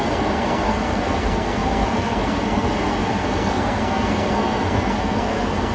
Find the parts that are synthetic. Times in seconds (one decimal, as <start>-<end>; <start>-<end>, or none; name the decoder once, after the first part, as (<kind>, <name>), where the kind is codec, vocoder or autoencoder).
0.0-5.7 (codec, SNAC)

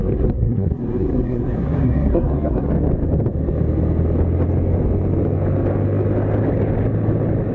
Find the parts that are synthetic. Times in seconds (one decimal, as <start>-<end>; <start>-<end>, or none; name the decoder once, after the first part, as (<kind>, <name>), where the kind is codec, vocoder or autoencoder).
0.0-2.7 (codec, SNAC)

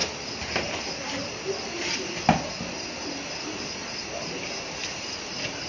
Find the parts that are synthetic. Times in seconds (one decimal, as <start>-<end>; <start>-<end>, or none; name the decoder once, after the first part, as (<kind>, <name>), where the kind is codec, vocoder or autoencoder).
3.0-5.7 (vocoder, BigVGAN v2)

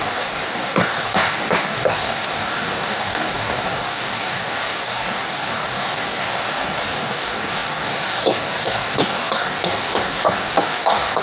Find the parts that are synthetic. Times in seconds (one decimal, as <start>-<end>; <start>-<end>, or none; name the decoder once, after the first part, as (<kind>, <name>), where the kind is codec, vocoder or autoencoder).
0.0-11.2 (codec, DAC)

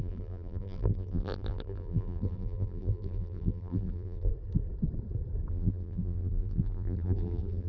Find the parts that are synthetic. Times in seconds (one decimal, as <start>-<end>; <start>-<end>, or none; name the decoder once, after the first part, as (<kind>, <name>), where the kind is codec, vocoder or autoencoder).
0.0-4.3 (vocoder, BigVGAN v2); 5.5-7.7